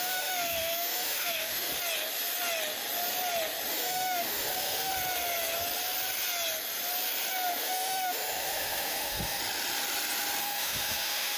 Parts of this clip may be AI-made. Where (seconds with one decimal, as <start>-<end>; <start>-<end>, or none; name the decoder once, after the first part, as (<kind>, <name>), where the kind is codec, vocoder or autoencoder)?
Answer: 0.0-1.7 (autoencoder, DAC-VAE); 3.7-4.9; 7.6-9.4; 10.4-11.4